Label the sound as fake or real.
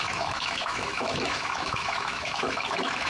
fake